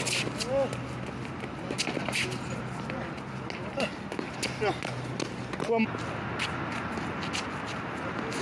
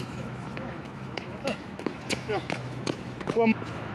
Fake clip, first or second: second